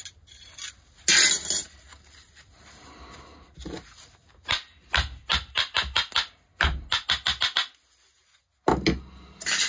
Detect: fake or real real